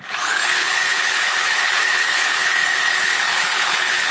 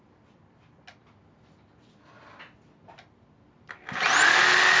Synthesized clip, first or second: first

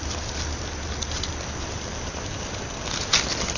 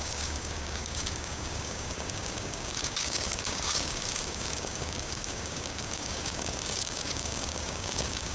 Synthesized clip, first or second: second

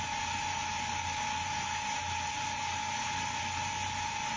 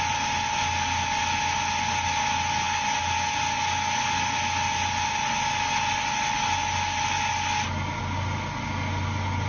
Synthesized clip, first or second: first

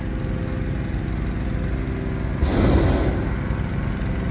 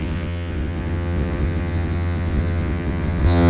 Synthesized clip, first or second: second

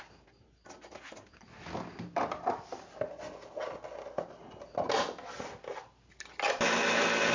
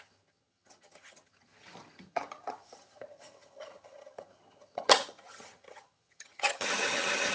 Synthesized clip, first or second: second